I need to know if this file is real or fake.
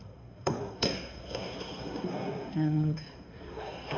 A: fake